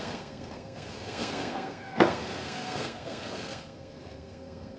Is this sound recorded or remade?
remade